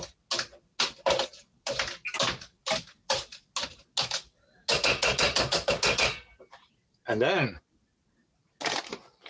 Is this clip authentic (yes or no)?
yes